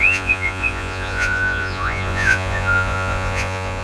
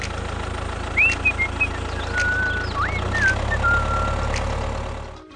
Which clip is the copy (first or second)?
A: first